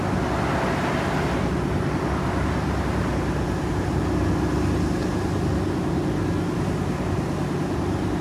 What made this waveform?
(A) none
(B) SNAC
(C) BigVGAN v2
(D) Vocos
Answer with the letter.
A